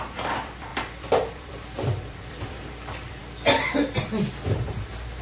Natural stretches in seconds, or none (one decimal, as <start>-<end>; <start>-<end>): 3.2-4.0